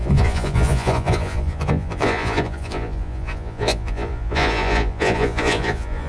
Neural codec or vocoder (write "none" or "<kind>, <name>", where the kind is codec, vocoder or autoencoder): vocoder, Vocos